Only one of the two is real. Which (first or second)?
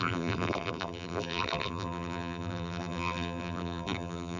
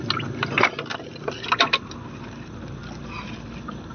second